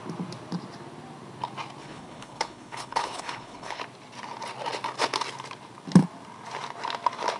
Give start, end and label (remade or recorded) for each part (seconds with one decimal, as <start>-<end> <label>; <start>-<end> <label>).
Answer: 0.0-1.8 recorded; 1.8-3.8 remade; 3.8-7.4 recorded